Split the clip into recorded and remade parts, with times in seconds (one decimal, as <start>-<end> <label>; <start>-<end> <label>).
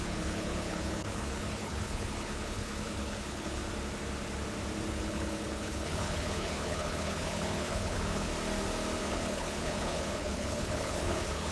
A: 0.0-3.6 remade; 3.6-4.9 recorded; 4.9-8.3 remade; 8.3-9.0 recorded; 9.0-11.5 remade